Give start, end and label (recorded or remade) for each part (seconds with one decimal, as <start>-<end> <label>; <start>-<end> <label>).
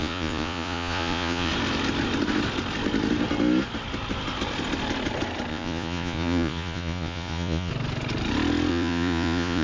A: 0.0-1.5 remade; 1.5-5.5 recorded; 5.5-7.7 remade; 7.7-8.7 recorded; 8.7-9.6 remade